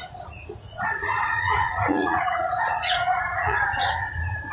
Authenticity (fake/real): fake